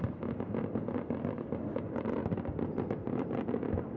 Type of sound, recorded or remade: recorded